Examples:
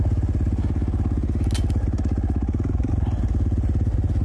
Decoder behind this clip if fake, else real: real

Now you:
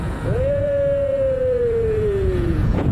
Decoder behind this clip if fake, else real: fake, vocoder, Vocos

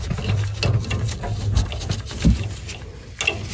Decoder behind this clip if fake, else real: real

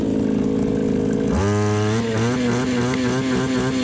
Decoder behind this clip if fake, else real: real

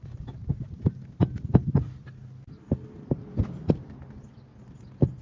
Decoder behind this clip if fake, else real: real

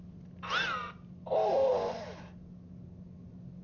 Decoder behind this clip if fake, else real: real